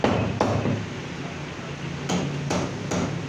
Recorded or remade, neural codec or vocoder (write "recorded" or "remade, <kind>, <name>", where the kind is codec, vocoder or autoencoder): recorded